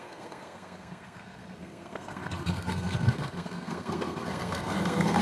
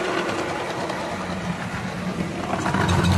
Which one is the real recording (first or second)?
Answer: second